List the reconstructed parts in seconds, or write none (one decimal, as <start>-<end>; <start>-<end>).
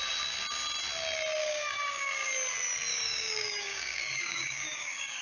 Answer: 1.4-2.3; 2.9-5.2